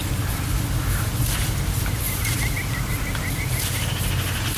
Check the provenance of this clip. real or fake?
real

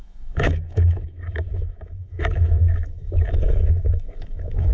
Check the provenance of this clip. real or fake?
fake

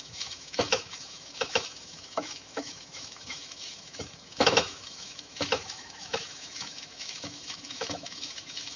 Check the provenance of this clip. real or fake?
fake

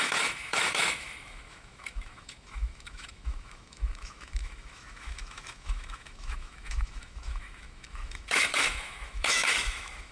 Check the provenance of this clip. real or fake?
fake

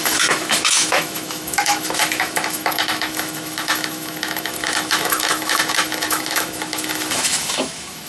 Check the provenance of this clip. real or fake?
fake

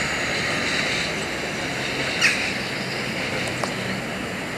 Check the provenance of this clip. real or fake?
real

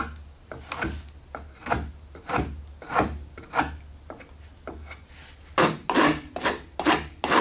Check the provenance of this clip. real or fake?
real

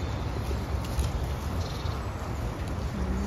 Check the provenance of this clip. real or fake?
real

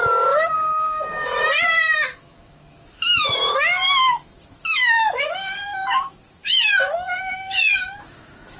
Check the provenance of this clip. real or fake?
fake